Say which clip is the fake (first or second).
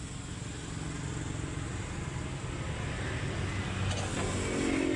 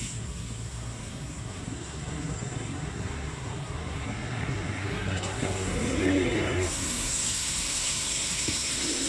second